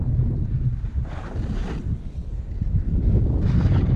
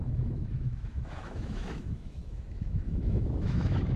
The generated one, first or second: second